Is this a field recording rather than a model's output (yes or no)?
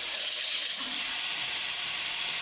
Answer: yes